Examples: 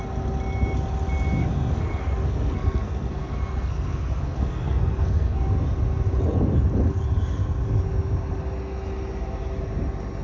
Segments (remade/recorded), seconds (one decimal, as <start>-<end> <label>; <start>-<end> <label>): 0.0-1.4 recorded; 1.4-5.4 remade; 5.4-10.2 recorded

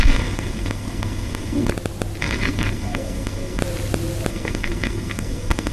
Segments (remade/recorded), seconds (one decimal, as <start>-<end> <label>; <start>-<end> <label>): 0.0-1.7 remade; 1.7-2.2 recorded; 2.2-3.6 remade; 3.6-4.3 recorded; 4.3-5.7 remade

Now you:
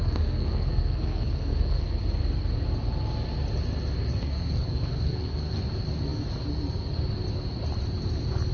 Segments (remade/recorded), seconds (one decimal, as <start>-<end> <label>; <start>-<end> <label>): 0.0-2.0 remade; 2.0-4.1 recorded; 4.1-5.6 remade; 5.6-8.5 recorded

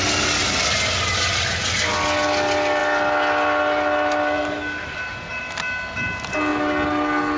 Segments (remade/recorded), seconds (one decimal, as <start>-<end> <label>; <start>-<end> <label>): 0.0-7.4 recorded